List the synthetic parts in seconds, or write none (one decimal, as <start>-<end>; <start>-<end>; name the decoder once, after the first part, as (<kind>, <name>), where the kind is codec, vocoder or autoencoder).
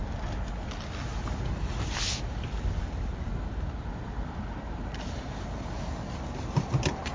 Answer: none